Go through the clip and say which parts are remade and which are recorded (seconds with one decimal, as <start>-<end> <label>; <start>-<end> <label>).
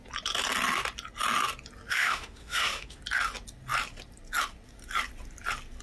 0.0-1.9 recorded; 1.9-3.0 remade; 3.0-5.8 recorded